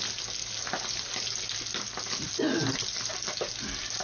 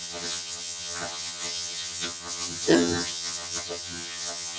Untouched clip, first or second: first